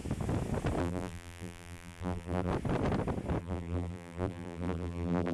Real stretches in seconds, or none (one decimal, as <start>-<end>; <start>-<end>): 0.0-0.8; 2.5-3.4